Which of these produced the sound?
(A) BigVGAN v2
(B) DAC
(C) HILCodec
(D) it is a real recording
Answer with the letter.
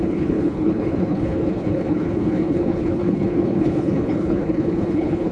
C